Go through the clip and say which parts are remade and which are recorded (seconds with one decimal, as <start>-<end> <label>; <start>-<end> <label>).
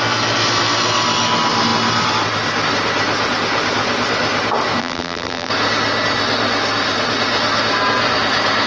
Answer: 0.0-4.8 recorded; 4.8-5.5 remade; 5.5-8.7 recorded